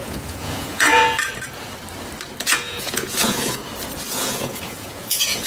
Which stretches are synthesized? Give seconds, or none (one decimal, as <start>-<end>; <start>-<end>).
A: 0.0-1.0; 2.4-3.6; 4.1-5.5